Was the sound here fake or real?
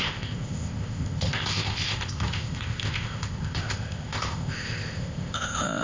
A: fake